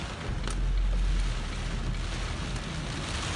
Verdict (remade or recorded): recorded